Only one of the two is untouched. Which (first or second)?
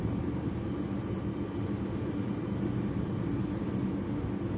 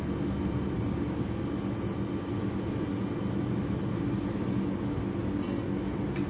second